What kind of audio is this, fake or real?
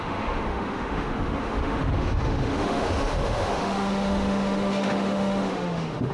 fake